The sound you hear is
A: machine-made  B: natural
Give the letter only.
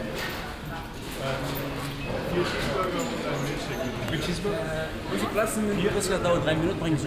B